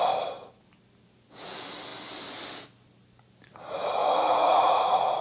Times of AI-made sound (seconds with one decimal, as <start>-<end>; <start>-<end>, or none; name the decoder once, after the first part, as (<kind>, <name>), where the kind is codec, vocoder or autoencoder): 4.0-5.2 (vocoder, Vocos)